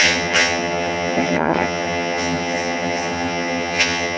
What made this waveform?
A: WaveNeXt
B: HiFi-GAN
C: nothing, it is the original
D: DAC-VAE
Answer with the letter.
B